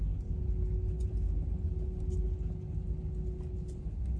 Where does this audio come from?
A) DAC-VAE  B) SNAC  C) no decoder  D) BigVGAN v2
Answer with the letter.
C